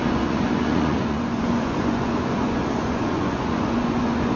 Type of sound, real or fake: fake